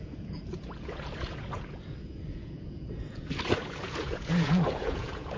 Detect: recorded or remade remade